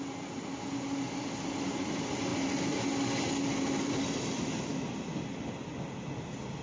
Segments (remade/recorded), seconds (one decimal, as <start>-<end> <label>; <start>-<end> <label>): 0.0-6.6 recorded